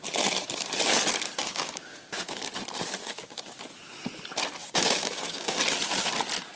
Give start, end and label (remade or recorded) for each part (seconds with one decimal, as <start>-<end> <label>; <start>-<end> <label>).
0.0-1.4 recorded; 1.4-2.5 remade; 2.5-3.0 recorded; 3.0-3.6 remade; 3.6-4.6 recorded; 4.6-5.6 remade; 5.6-6.6 recorded